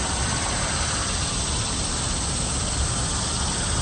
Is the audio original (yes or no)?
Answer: no